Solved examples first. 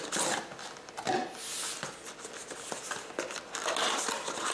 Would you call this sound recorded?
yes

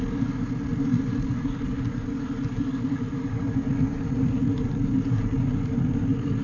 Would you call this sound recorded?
yes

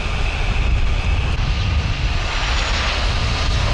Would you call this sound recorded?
yes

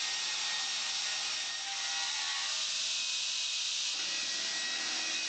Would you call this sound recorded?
yes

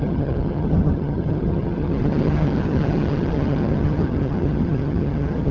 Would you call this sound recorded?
no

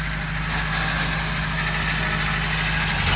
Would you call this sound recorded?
yes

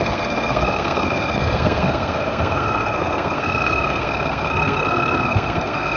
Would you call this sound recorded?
no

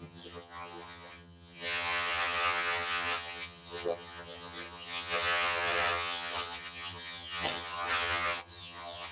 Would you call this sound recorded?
no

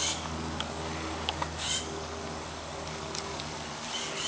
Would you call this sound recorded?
no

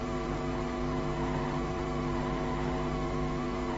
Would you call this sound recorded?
no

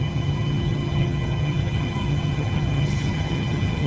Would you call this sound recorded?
no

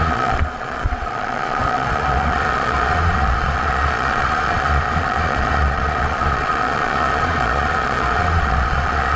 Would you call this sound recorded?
no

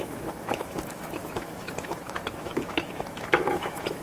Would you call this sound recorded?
no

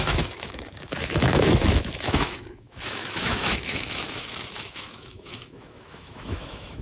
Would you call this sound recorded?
no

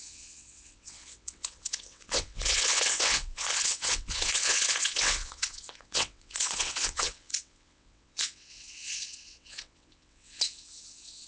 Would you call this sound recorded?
no